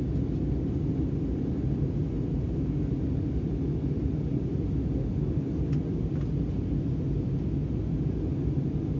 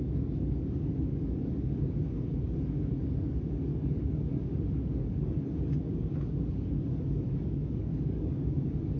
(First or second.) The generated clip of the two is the second